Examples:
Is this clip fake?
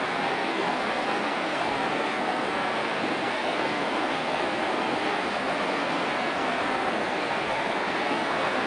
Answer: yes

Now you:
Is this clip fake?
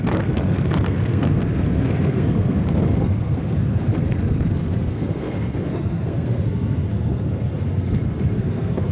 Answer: yes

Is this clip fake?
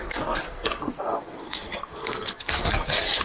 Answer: yes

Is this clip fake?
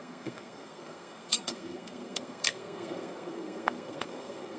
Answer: yes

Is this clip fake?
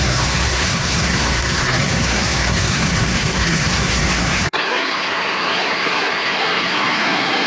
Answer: yes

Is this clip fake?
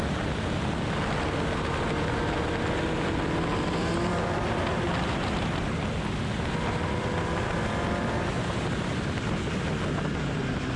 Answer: no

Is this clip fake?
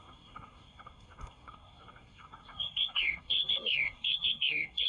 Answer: yes